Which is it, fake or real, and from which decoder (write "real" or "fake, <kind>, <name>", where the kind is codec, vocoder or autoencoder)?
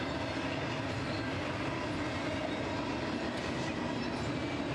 real